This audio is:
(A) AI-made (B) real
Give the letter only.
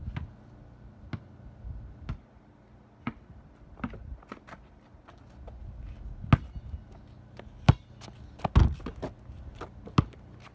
B